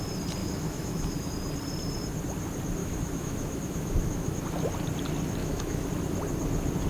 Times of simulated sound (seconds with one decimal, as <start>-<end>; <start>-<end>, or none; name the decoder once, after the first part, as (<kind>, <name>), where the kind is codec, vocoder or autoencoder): 0.4-1.3 (autoencoder, DAC-VAE); 2.8-4.4; 5.4-5.9